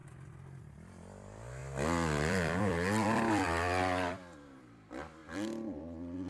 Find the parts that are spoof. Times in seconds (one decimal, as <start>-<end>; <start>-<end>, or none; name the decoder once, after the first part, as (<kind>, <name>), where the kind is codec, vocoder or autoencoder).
0.6-6.3 (vocoder, BigVGAN v2)

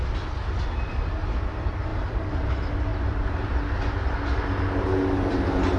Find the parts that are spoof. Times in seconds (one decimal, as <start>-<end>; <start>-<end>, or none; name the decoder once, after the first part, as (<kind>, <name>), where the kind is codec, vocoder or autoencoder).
1.9-2.5 (vocoder, BigVGAN v2); 2.9-3.5

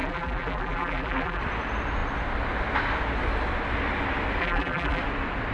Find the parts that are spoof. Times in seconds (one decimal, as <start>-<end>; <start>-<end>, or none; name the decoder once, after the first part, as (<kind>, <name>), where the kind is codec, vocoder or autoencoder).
0.0-1.4 (vocoder, BigVGAN v2); 4.4-5.0

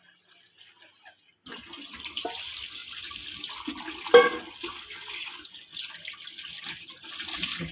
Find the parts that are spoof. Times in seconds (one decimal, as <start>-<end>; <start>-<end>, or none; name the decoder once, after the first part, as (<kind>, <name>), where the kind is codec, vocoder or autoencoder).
2.8-7.7 (vocoder, BigVGAN v2)

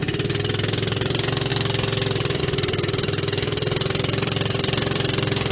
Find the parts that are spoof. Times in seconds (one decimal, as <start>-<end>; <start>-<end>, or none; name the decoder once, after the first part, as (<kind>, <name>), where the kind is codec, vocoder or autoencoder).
0.0-1.5 (vocoder, BigVGAN v2); 2.4-5.5

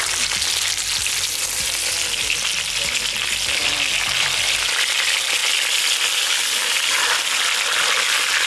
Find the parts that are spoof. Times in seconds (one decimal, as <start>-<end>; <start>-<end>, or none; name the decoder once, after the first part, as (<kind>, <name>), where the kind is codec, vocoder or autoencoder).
none

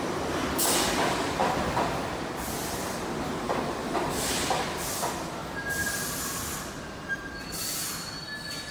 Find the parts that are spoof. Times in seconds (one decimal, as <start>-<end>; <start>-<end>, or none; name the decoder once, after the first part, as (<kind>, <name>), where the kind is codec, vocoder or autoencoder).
1.4-2.2 (vocoder, BigVGAN v2); 3.8-4.5

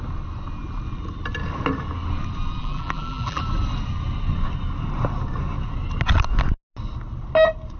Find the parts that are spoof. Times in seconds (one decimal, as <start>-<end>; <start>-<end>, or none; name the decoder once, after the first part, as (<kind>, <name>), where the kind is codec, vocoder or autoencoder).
2.6-3.4 (vocoder, BigVGAN v2)